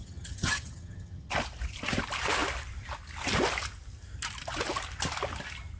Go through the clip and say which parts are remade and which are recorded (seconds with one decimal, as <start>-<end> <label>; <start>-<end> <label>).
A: 0.0-1.3 remade; 1.3-5.8 recorded